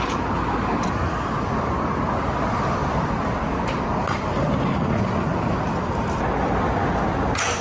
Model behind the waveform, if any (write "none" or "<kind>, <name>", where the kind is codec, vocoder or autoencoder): none